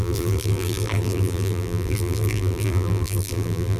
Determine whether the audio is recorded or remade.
remade